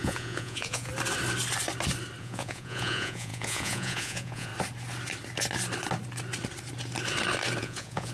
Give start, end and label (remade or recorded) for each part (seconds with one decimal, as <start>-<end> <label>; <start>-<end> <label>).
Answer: 0.0-0.9 remade; 0.9-2.2 recorded; 2.2-4.5 remade; 4.5-7.6 recorded; 7.6-8.1 remade